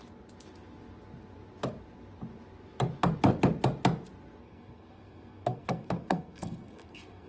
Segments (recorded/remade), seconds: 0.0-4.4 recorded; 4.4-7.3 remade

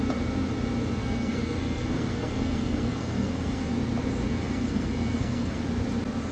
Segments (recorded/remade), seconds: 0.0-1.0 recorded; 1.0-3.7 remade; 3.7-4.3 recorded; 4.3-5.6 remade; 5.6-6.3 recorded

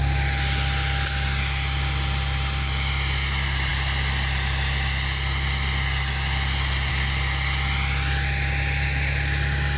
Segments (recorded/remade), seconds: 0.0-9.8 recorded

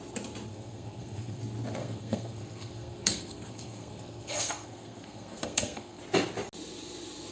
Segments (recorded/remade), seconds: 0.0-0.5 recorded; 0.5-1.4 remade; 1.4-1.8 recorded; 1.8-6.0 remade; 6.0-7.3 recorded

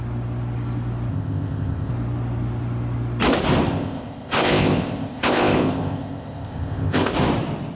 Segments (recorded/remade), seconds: 0.0-1.1 recorded; 1.1-1.9 remade; 1.9-3.7 recorded; 3.7-7.1 remade; 7.1-7.8 recorded